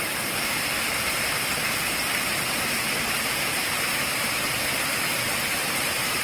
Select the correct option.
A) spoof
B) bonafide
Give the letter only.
B